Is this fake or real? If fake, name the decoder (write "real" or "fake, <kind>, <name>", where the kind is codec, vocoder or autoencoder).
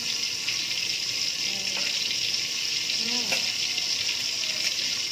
real